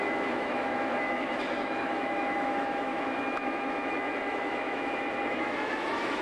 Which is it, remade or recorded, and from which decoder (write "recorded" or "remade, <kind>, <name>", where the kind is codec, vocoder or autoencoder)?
remade, autoencoder, DAC-VAE